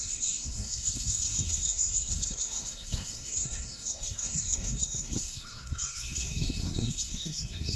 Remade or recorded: remade